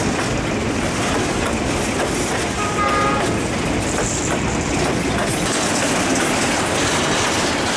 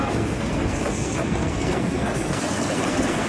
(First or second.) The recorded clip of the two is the first